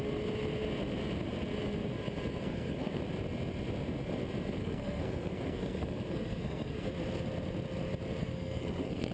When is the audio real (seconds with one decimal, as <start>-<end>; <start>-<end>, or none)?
0.0-2.4; 3.0-4.6; 6.9-8.2